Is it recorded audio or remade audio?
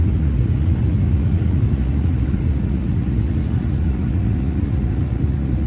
remade